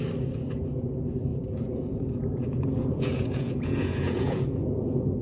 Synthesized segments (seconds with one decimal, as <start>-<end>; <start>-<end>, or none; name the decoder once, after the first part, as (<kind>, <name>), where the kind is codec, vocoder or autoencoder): 1.3-4.4 (vocoder, Vocos)